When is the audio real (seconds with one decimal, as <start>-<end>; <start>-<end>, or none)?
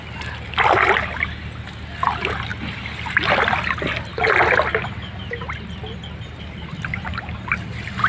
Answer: 0.0-8.1